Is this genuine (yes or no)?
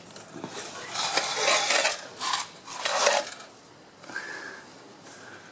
yes